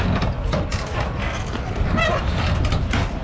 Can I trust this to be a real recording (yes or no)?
yes